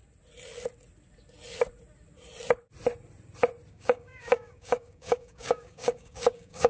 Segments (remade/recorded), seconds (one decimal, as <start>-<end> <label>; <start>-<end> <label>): 0.0-3.7 recorded; 3.7-6.7 remade